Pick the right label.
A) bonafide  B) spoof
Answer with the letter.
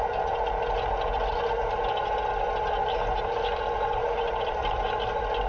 A